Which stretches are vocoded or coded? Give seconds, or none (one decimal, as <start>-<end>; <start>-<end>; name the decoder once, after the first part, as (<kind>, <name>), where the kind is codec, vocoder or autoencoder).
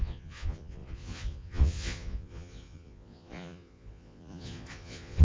0.0-5.2 (vocoder, Vocos)